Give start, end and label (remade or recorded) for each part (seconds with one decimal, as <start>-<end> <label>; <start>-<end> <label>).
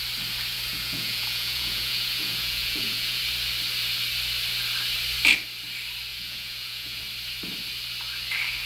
0.0-0.7 recorded; 0.7-3.2 remade; 3.2-6.1 recorded; 6.1-7.0 remade; 7.0-8.7 recorded